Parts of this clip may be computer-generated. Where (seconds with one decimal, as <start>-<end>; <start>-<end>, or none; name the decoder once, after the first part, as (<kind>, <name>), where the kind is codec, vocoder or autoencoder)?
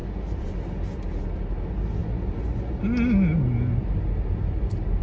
none